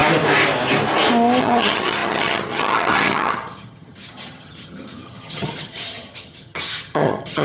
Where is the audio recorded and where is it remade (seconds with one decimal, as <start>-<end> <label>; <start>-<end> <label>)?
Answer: 0.0-1.4 recorded; 1.4-7.4 remade